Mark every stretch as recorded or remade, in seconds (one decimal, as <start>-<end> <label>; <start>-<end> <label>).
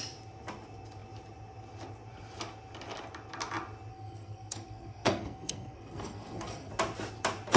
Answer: 0.0-3.9 recorded; 3.9-6.7 remade; 6.7-7.6 recorded